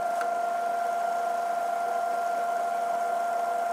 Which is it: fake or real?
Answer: real